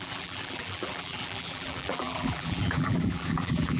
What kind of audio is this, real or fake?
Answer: fake